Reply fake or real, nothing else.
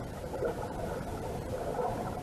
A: fake